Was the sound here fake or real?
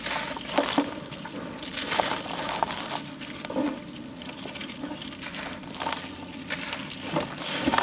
real